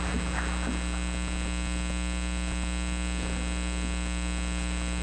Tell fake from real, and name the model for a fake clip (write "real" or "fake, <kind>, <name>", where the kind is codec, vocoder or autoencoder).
real